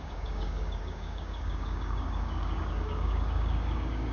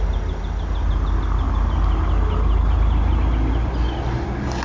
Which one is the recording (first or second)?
second